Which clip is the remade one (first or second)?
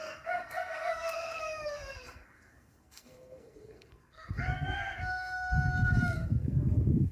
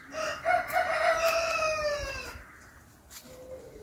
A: first